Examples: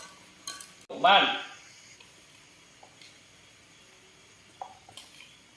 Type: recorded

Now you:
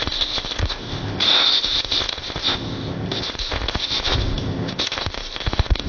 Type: remade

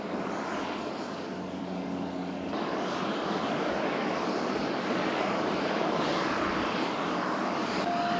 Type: remade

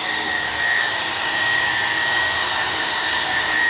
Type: remade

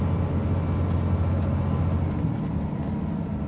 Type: recorded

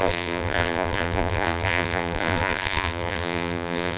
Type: remade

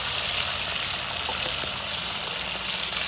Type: recorded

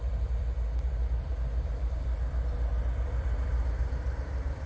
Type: remade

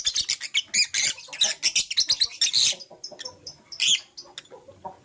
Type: recorded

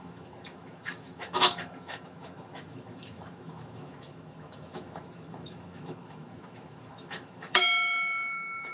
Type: remade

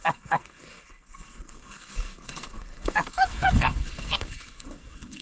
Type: remade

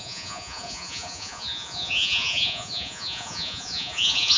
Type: remade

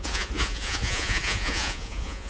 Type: remade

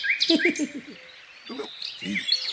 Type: recorded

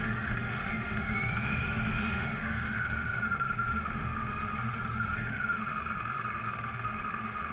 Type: remade